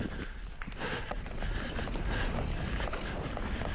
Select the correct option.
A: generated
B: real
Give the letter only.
B